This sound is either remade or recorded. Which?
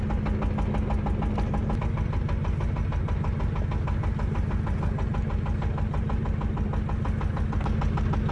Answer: recorded